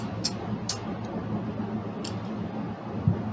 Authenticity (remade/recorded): recorded